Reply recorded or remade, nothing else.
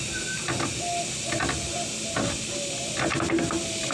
recorded